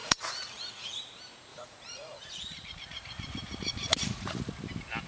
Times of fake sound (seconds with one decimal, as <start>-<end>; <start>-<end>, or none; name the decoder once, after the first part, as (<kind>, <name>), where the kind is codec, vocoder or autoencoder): 0.0-1.0 (vocoder, Vocos); 1.5-4.5